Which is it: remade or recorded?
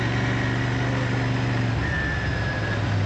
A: recorded